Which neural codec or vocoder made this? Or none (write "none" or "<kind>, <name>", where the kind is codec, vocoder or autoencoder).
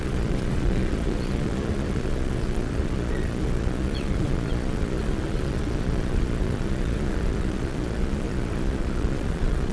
vocoder, Vocos